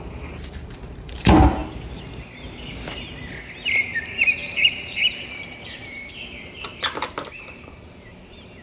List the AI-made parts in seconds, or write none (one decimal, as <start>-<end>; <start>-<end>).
0.0-1.6; 3.9-6.7; 7.4-8.6